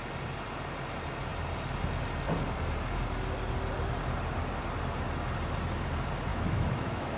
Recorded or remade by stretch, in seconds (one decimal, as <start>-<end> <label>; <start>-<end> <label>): 0.0-6.3 recorded; 6.3-7.2 remade